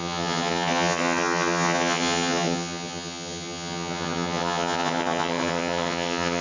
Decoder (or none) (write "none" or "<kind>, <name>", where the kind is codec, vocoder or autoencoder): vocoder, HiFi-GAN